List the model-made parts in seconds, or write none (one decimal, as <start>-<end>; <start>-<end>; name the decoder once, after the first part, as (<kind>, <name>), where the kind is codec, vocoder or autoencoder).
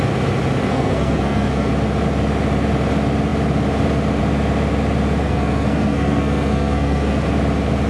0.7-1.7 (codec, SNAC); 5.2-7.3